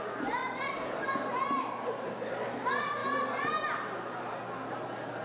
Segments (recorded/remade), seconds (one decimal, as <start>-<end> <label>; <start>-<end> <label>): 0.0-5.2 recorded